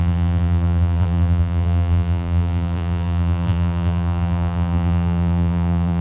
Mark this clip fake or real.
fake